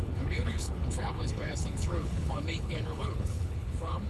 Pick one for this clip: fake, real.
fake